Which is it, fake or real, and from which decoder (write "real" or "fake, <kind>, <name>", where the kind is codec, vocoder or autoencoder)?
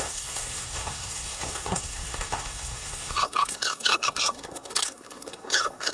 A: fake, codec, SNAC